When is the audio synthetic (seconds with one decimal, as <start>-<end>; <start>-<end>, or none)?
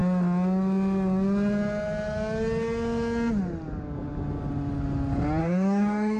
5.4-6.2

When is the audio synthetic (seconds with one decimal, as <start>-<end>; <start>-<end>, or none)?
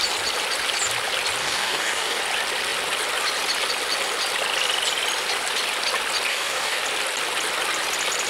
1.4-2.2; 6.3-6.8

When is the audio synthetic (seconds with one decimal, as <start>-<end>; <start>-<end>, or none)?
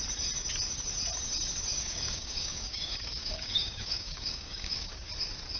1.7-5.1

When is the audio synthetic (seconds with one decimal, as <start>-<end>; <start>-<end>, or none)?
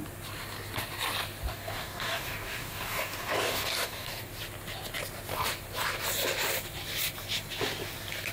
1.5-4.3